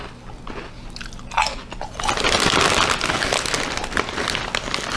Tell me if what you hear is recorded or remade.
recorded